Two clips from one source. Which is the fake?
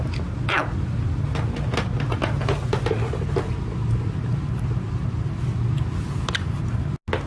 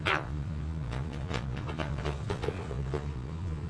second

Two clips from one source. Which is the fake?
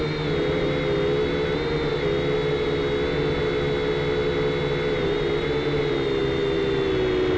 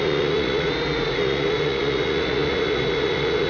second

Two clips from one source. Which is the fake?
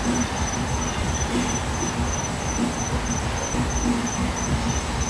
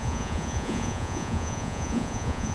second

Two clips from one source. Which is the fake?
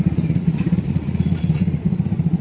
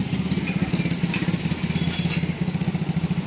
first